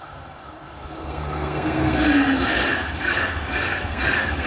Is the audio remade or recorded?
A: remade